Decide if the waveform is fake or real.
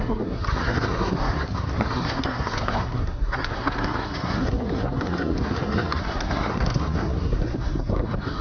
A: fake